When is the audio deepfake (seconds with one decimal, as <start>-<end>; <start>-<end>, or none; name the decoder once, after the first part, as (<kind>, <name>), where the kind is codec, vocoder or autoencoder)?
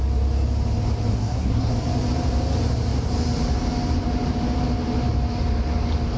1.1-1.7 (codec, SNAC)